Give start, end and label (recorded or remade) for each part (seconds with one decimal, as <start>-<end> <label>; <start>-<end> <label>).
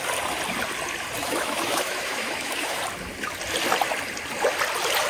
0.0-1.2 recorded; 1.2-2.8 remade; 2.8-5.1 recorded